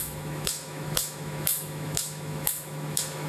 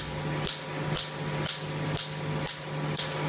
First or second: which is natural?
second